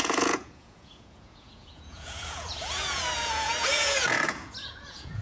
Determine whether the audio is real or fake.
fake